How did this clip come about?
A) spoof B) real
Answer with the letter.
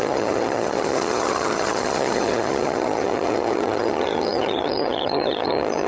A